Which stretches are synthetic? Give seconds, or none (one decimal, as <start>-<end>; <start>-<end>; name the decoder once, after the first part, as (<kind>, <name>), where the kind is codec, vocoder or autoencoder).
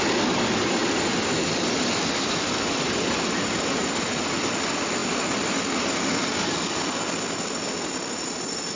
none